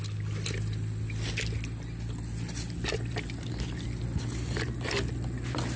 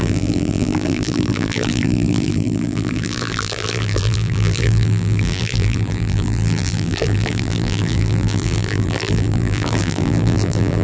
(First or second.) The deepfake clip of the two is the second